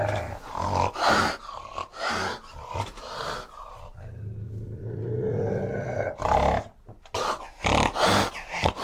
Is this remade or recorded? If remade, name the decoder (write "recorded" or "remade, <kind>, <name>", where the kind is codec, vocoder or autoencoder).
recorded